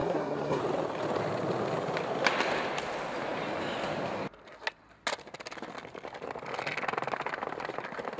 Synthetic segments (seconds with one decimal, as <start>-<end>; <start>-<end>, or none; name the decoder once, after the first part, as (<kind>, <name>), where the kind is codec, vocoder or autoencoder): 0.0-0.6 (codec, SNAC)